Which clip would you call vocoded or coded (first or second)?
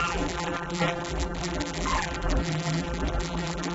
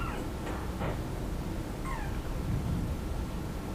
first